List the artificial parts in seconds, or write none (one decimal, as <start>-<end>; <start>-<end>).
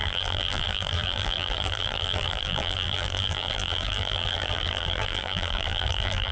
0.0-6.3